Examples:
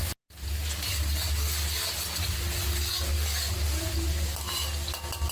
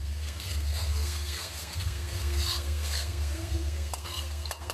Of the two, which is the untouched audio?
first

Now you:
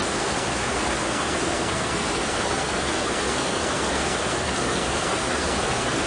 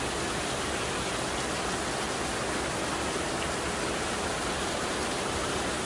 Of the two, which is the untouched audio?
second